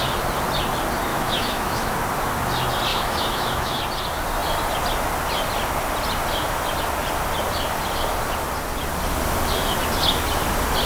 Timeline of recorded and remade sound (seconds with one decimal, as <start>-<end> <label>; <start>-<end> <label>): 0.0-1.1 recorded; 1.1-1.9 remade; 1.9-2.9 recorded; 2.9-3.8 remade; 3.8-10.9 recorded